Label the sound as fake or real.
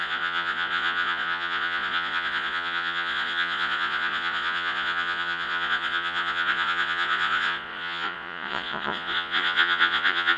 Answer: fake